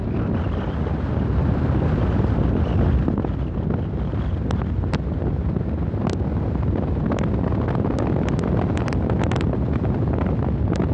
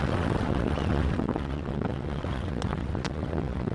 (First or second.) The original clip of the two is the first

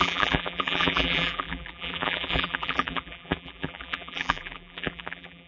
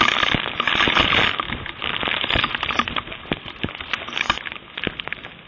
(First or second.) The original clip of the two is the second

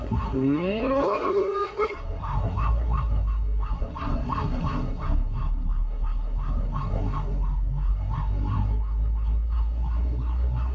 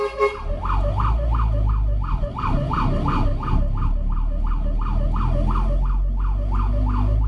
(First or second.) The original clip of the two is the second